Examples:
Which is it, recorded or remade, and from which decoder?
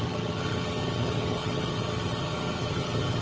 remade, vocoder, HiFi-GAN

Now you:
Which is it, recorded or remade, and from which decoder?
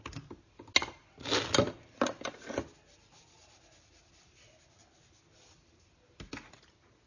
recorded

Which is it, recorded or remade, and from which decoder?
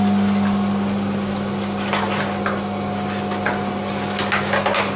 recorded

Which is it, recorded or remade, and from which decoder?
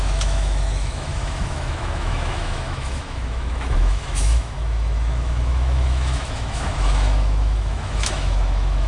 remade, autoencoder, DAC-VAE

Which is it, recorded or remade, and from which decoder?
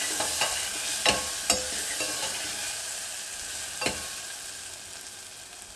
recorded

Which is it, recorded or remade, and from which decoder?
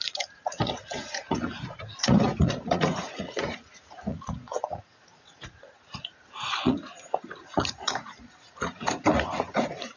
remade, vocoder, Vocos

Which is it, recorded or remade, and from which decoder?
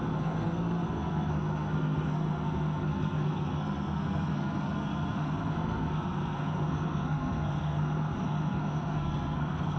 remade, codec, SNAC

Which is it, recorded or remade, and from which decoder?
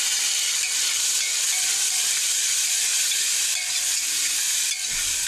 recorded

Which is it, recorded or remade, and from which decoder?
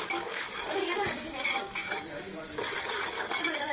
remade, codec, DAC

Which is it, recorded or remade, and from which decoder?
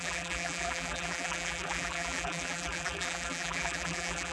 remade, vocoder, BigVGAN v2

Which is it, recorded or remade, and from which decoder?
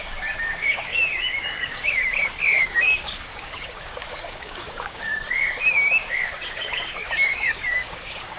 remade, codec, DAC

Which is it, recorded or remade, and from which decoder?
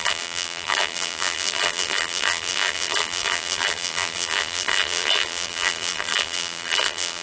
remade, vocoder, BigVGAN v2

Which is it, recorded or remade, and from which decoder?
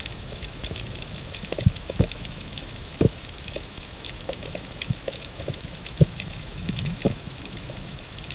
remade, autoencoder, DAC-VAE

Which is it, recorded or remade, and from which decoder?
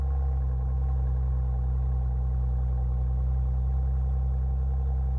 recorded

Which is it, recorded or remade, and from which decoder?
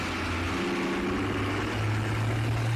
recorded